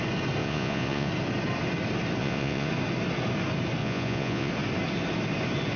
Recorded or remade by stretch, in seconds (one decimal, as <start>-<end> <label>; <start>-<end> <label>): 0.0-0.4 recorded; 0.4-1.1 remade; 1.1-2.2 recorded; 2.2-2.7 remade; 2.7-3.8 recorded; 3.8-4.5 remade; 4.5-5.8 recorded